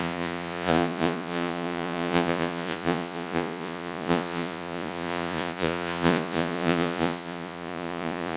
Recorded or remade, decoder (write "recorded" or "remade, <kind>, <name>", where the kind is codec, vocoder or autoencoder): remade, vocoder, Vocos